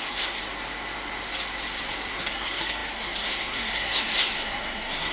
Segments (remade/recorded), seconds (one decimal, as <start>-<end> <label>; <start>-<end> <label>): 0.0-0.4 remade; 0.4-2.1 recorded; 2.1-5.1 remade